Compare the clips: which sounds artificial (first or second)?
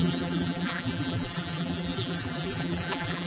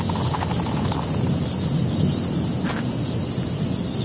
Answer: first